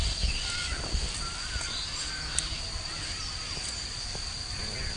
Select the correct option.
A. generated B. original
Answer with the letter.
B